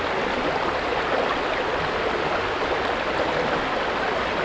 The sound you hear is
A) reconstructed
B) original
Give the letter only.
B